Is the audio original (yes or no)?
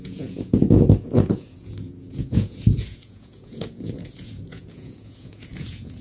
no